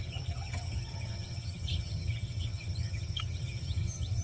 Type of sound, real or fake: fake